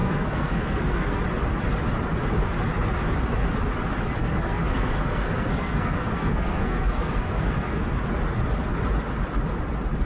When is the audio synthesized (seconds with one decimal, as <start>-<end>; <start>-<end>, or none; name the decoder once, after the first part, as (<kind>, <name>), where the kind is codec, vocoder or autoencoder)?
0.0-1.2 (codec, SNAC); 4.2-7.8